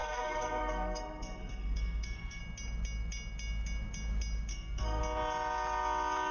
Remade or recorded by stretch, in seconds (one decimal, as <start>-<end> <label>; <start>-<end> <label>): 0.0-2.4 remade; 2.4-4.5 recorded; 4.5-5.0 remade; 5.0-6.3 recorded

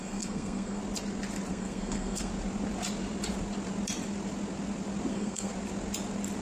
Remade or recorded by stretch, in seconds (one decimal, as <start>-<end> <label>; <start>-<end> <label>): 0.0-0.8 remade; 0.8-1.5 recorded; 1.5-2.3 remade; 2.3-5.1 recorded; 5.1-5.5 remade; 5.5-6.4 recorded

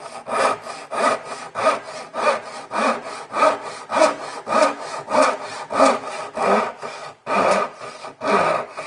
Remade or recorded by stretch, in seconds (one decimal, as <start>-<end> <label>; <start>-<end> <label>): 0.0-8.9 recorded

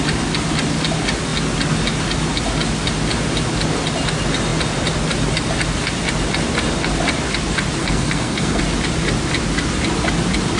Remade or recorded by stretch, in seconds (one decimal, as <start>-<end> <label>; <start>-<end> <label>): 0.0-7.8 recorded; 7.8-8.6 remade; 8.6-10.6 recorded

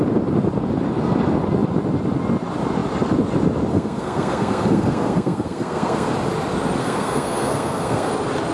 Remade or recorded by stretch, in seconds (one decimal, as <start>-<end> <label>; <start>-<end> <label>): 0.0-3.7 recorded; 3.7-6.1 remade; 6.1-6.8 recorded; 6.8-8.1 remade; 8.1-8.5 recorded

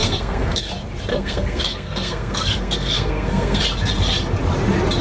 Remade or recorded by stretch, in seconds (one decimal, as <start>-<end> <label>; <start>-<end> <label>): 0.0-0.7 remade; 0.7-1.1 recorded; 1.1-3.6 remade; 3.6-5.0 recorded

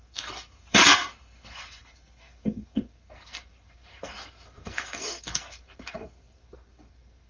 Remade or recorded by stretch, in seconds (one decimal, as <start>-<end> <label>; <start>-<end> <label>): 0.0-7.3 remade